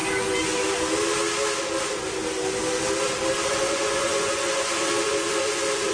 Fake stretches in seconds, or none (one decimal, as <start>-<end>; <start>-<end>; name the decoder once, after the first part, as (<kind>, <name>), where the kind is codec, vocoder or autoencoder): 3.5-5.9 (vocoder, Vocos)